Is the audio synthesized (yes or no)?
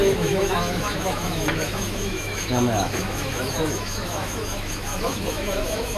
yes